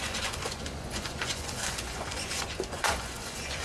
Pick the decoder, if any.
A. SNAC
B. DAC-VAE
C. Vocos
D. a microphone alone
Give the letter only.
C